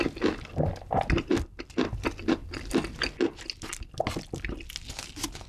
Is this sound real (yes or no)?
yes